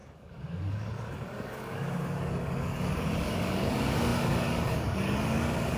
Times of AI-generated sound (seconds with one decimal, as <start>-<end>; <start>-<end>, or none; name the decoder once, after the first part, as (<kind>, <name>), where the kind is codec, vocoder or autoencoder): 0.0-5.8 (codec, DAC)